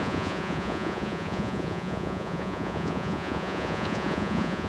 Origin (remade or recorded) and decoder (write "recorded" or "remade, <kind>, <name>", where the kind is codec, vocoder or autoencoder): remade, vocoder, Vocos